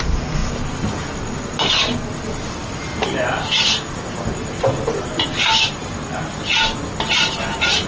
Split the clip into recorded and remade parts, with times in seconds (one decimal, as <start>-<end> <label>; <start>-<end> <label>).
0.0-2.9 recorded; 2.9-6.4 remade; 6.4-7.9 recorded